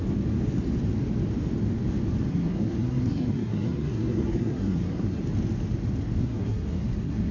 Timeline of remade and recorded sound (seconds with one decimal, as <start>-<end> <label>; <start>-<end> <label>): 0.0-2.3 recorded; 2.3-5.2 remade; 5.2-6.2 recorded; 6.2-7.3 remade